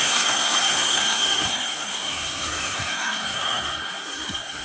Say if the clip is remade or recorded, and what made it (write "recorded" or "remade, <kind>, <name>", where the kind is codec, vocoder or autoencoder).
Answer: remade, codec, SNAC